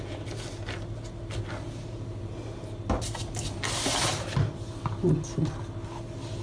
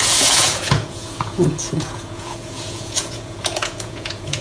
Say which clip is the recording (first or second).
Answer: first